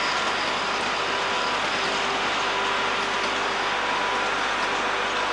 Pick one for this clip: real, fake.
real